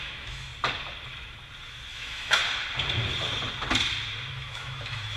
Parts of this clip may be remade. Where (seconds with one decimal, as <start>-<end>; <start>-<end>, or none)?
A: 0.0-0.5; 1.9-2.4; 4.3-5.2